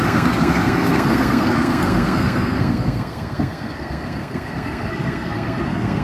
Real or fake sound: fake